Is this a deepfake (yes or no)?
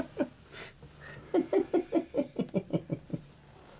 no